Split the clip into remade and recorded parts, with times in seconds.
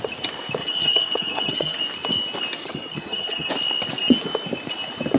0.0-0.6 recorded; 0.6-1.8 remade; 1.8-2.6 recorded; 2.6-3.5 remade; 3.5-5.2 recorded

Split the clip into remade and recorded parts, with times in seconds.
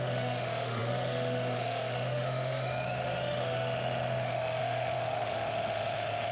0.0-6.3 remade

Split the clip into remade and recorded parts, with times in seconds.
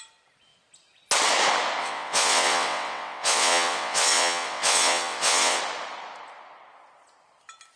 0.0-1.8 recorded; 1.8-5.6 remade; 5.6-7.8 recorded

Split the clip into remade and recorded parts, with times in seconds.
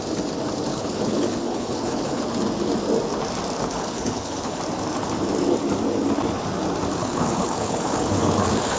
0.0-0.7 recorded; 0.7-2.2 remade; 2.2-3.6 recorded; 3.6-4.6 remade; 4.6-7.0 recorded; 7.0-8.8 remade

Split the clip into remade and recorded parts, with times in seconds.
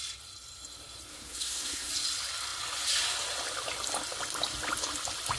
0.0-1.1 recorded; 1.1-1.9 remade; 1.9-5.4 recorded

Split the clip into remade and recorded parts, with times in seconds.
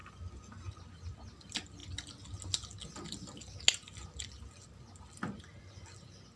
0.0-6.4 recorded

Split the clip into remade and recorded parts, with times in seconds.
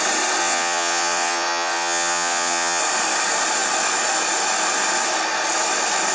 0.0-0.4 recorded; 0.4-2.8 remade; 2.8-6.1 recorded